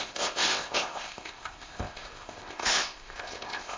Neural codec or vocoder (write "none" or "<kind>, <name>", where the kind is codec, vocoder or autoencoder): codec, ZipCodec